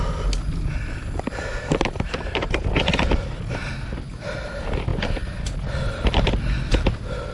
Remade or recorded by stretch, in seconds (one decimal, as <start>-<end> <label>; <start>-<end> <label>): 0.0-7.3 recorded